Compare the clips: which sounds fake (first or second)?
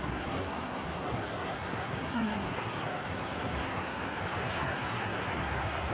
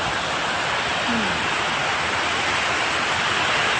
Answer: first